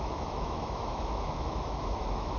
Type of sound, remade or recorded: remade